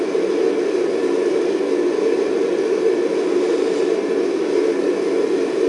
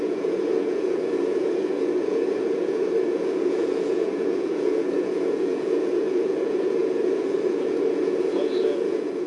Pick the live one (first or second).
first